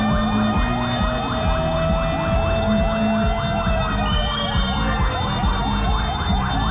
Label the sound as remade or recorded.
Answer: recorded